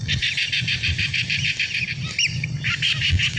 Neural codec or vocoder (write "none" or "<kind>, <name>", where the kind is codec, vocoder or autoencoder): none